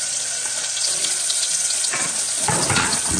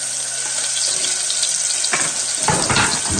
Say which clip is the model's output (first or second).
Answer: first